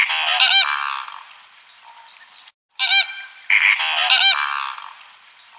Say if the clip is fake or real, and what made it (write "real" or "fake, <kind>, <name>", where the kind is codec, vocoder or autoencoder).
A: real